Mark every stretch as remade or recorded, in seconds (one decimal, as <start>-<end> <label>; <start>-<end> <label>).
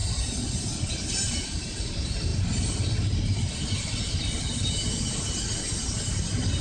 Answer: 0.0-6.6 recorded